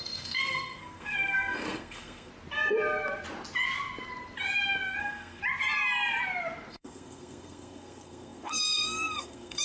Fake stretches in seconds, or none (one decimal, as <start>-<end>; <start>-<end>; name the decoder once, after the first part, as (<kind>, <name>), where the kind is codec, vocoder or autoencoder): 0.0-2.3 (codec, SNAC); 5.0-5.4; 6.7-9.6

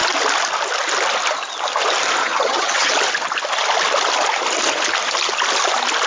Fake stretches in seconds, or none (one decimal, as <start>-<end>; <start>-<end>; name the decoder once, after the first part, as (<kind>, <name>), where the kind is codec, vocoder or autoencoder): 2.2-2.9 (vocoder, HiFi-GAN)

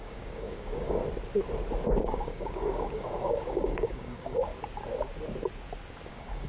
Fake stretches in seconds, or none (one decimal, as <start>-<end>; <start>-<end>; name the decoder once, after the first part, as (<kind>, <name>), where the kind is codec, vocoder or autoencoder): 0.0-1.0 (codec, DAC); 2.0-4.5; 6.1-6.5

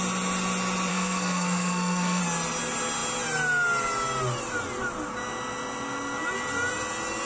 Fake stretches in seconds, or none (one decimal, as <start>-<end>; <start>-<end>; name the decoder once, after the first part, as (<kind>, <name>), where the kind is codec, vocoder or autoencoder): 0.9-2.2 (codec, SNAC)

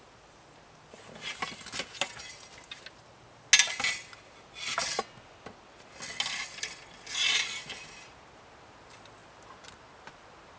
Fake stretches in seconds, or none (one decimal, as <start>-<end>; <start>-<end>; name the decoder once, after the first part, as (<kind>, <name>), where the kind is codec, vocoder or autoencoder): none

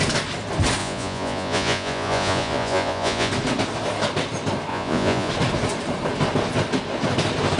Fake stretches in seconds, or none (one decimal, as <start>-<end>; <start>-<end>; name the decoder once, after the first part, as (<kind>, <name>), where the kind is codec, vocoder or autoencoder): 0.8-3.3 (vocoder, Vocos); 4.7-5.3